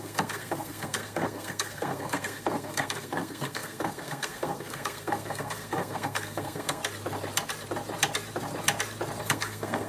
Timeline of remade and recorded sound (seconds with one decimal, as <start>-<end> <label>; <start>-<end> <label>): 0.0-6.8 remade; 6.8-9.2 recorded; 9.2-9.9 remade